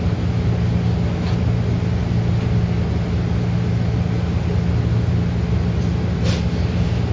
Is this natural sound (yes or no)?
yes